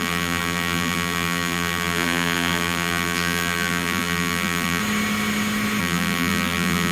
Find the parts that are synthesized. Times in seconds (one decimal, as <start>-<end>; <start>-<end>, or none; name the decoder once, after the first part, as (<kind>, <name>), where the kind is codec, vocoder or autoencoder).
0.0-4.8 (vocoder, BigVGAN v2); 5.8-6.9